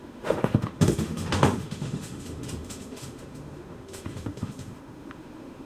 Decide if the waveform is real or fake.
fake